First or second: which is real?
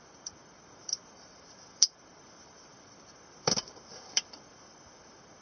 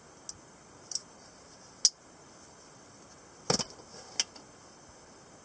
second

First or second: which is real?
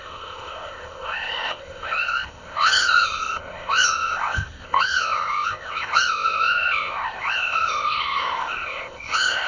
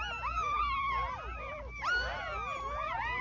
second